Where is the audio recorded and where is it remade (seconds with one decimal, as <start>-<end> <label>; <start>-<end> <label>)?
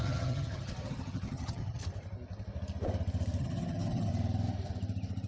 0.0-1.8 remade; 1.8-3.4 recorded; 3.4-4.1 remade; 4.1-5.3 recorded